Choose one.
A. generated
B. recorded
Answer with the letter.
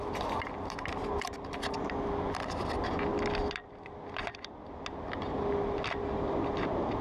B